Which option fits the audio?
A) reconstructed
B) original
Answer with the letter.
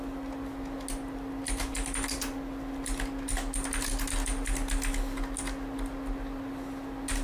B